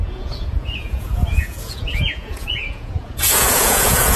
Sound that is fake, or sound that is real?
fake